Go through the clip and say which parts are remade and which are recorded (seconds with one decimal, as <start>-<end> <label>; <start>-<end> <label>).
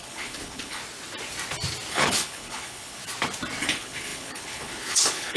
0.0-0.8 remade; 0.8-1.9 recorded; 1.9-3.0 remade; 3.0-3.6 recorded; 3.6-5.4 remade